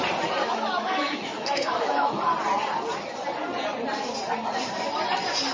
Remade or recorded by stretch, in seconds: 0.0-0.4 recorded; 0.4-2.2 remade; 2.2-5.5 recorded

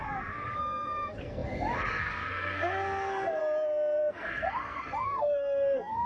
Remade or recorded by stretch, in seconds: 0.0-3.4 remade; 3.4-4.1 recorded; 4.1-6.1 remade

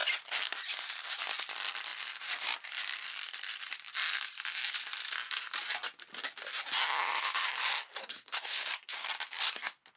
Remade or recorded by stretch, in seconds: 0.0-8.0 recorded; 8.0-9.1 remade; 9.1-10.0 recorded

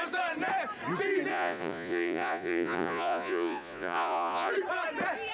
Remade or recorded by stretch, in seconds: 0.0-1.3 recorded; 1.3-4.5 remade; 4.5-5.3 recorded

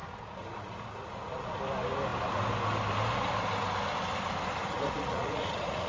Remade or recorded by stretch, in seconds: 0.0-1.6 remade; 1.6-4.6 recorded; 4.6-5.9 remade

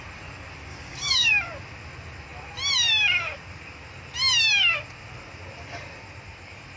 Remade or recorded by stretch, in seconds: 0.0-0.7 recorded; 0.7-1.3 remade; 1.3-6.8 recorded

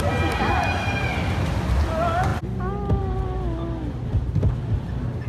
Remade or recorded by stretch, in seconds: 0.0-5.3 recorded